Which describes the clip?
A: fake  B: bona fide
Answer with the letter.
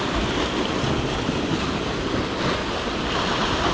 B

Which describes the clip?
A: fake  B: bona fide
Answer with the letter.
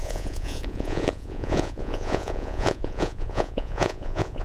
A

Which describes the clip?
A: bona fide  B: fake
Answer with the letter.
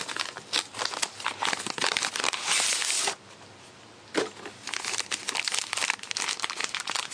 A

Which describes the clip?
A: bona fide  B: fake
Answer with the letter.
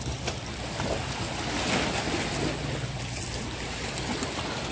A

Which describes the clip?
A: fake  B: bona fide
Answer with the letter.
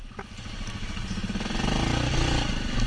B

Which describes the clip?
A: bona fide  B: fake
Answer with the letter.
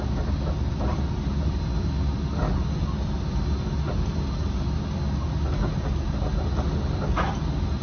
A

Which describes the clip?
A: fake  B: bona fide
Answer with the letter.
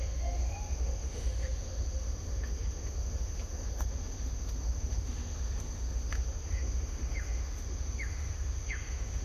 A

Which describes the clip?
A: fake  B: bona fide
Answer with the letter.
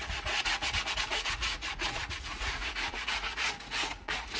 A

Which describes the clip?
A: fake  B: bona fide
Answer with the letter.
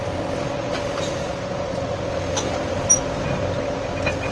B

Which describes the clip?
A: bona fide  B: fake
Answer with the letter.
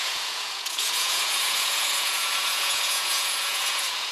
B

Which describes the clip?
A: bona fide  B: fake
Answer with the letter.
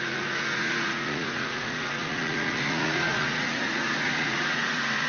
B